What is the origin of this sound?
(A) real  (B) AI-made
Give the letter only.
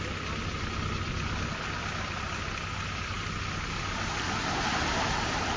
A